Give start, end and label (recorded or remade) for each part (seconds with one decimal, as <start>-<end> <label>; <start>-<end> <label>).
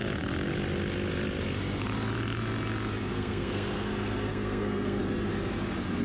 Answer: 0.0-3.1 recorded; 3.1-5.0 remade; 5.0-6.0 recorded